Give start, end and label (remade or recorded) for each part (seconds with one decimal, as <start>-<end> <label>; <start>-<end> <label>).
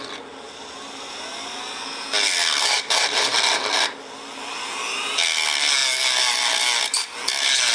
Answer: 0.0-7.7 recorded